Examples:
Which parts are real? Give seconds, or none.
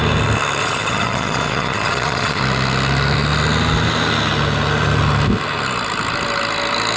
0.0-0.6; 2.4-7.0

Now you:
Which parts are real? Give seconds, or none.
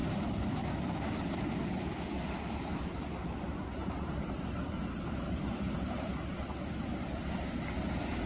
0.6-2.7; 6.1-8.3